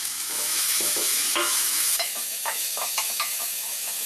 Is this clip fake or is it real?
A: fake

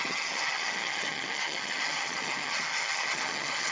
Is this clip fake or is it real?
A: fake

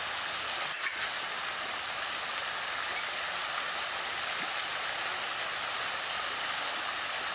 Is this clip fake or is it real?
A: real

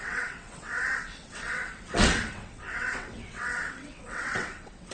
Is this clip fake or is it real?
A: fake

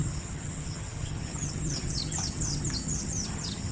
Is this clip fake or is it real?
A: fake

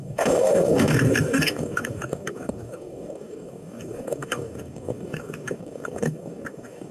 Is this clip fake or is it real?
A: fake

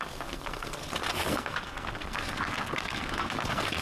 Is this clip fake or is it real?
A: fake